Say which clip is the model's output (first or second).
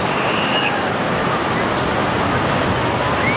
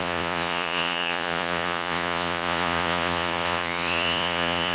second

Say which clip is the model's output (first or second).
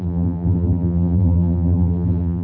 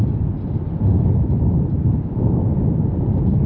first